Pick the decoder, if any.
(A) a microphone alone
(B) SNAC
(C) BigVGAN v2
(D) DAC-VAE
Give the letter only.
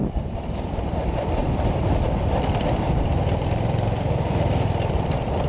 C